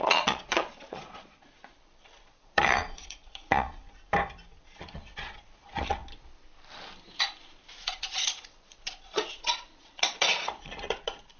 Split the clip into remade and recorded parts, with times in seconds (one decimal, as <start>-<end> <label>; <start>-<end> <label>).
0.0-3.8 remade; 3.8-4.6 recorded; 4.6-6.0 remade; 6.0-7.8 recorded; 7.8-11.4 remade